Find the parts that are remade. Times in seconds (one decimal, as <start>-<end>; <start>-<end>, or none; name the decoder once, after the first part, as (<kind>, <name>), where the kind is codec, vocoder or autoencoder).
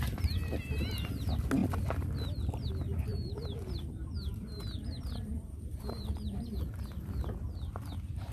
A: 3.1-7.4 (vocoder, BigVGAN v2)